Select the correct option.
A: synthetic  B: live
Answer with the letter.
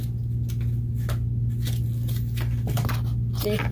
B